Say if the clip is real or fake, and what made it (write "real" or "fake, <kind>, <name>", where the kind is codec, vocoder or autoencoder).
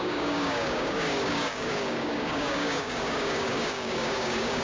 fake, codec, DAC